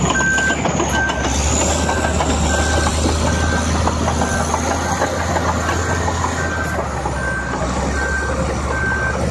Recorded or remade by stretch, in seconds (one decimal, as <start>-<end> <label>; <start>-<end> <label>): 0.0-9.3 recorded